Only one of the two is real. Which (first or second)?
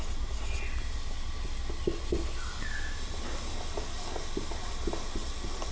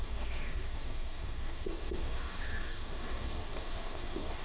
first